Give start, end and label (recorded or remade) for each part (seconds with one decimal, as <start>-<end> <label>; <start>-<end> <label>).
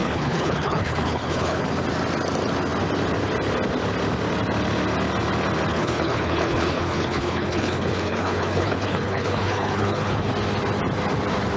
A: 0.0-1.7 remade; 1.7-5.7 recorded; 5.7-10.3 remade; 10.3-11.6 recorded